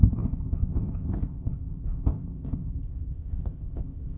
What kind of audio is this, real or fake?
fake